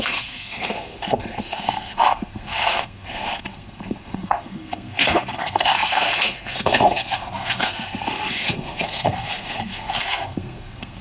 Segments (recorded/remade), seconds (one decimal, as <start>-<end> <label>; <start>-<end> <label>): 0.0-11.0 remade